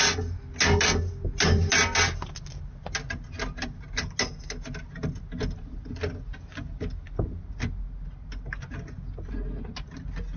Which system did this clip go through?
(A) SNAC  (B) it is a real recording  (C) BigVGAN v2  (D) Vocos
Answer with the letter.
B